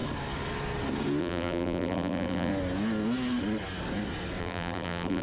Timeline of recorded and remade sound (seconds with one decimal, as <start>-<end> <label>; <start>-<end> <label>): 0.0-1.2 recorded; 1.2-2.5 remade; 2.5-4.4 recorded; 4.4-5.2 remade